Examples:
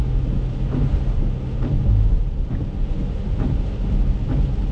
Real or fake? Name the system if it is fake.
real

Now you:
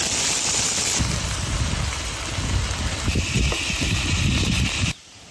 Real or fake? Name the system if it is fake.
real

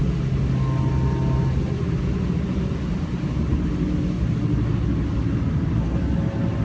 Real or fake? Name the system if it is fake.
real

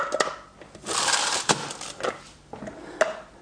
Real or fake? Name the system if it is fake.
real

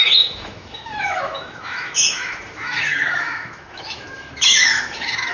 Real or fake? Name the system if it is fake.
fake, autoencoder, DAC-VAE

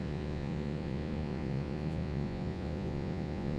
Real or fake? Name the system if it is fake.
fake, vocoder, Vocos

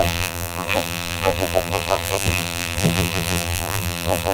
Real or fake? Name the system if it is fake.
fake, vocoder, BigVGAN v2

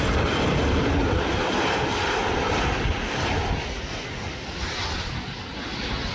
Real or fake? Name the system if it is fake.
real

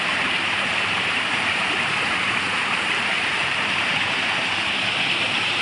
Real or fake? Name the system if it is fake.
fake, vocoder, BigVGAN v2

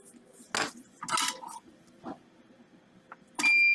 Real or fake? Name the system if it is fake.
real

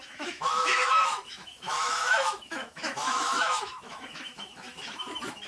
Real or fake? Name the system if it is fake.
fake, autoencoder, DAC-VAE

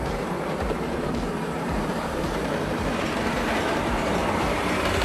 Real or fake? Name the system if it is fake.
fake, vocoder, BigVGAN v2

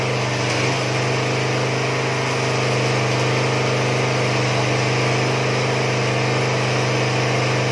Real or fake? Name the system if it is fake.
real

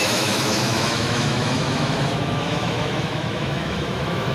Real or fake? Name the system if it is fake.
fake, autoencoder, DAC-VAE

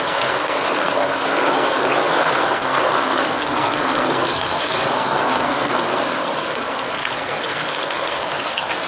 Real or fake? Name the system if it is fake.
fake, codec, SNAC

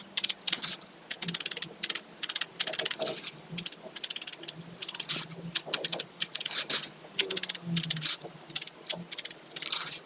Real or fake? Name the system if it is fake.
real